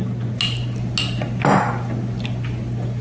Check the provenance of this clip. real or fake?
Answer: real